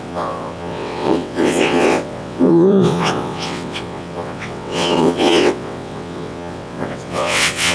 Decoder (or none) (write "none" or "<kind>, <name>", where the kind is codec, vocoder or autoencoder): vocoder, WaveNeXt